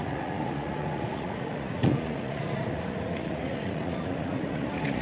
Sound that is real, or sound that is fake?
fake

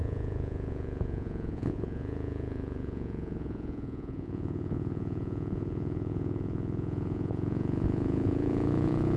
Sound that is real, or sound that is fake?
fake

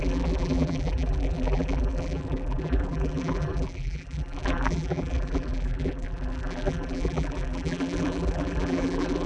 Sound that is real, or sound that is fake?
fake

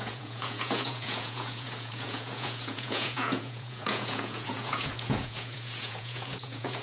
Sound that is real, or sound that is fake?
fake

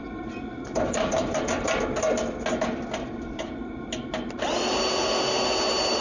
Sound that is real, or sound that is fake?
real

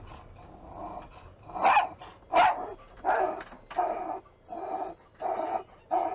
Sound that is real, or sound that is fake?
real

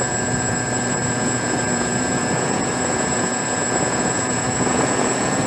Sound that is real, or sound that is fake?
fake